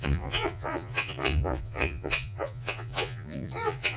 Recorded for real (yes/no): no